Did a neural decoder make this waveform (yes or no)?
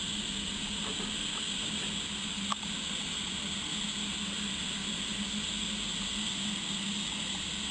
no